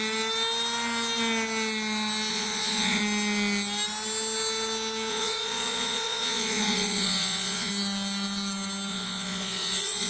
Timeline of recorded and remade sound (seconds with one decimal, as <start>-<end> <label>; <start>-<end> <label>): 0.0-2.3 recorded; 2.3-3.0 remade; 3.0-5.1 recorded; 5.1-7.7 remade; 7.7-8.9 recorded; 8.9-10.1 remade